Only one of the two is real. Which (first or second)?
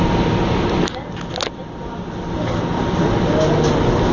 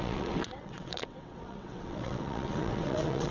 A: first